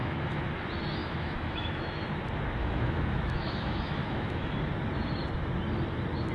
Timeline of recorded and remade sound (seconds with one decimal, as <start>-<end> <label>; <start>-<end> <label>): 0.0-0.5 remade; 0.5-1.0 recorded; 1.0-2.2 remade; 2.2-2.6 recorded; 2.6-4.5 remade; 4.5-6.3 recorded